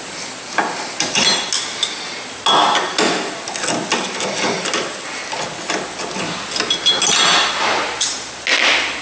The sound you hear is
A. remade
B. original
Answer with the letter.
B